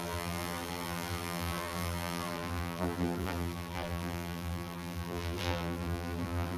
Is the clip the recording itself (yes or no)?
no